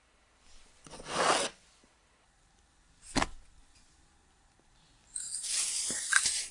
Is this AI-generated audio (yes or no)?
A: no